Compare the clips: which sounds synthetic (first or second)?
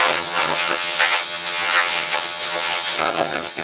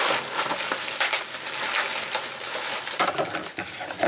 first